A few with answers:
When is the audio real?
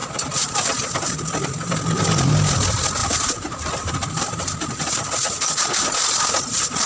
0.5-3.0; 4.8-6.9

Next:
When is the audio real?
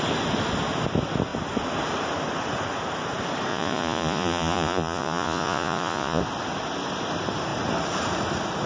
0.0-3.5; 6.2-8.7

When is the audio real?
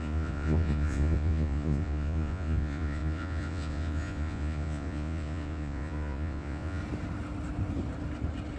6.8-8.6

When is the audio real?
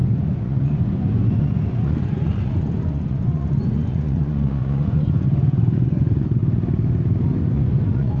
6.4-7.5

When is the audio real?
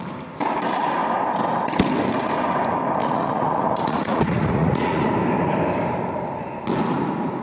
0.0-3.0; 5.1-7.4